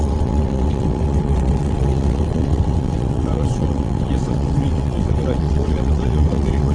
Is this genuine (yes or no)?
no